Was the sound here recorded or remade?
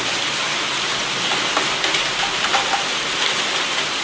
recorded